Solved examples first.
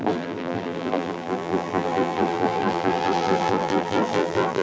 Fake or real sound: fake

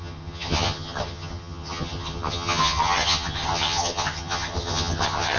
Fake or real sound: fake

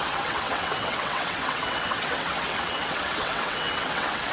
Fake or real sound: fake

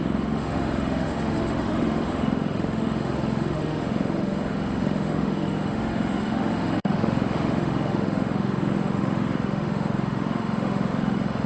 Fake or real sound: fake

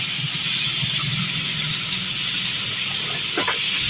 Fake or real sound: real